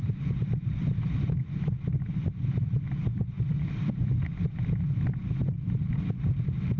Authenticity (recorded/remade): recorded